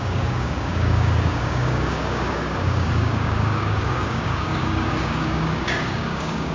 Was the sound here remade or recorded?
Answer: remade